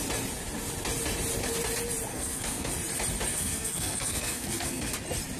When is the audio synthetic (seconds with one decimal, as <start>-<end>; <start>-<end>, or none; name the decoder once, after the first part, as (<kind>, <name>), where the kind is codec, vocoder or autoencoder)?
2.1-2.7 (codec, SNAC); 3.3-4.9